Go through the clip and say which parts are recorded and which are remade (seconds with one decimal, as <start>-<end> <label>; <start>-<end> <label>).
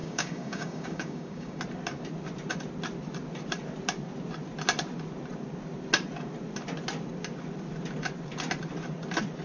0.0-1.6 remade; 1.6-9.4 recorded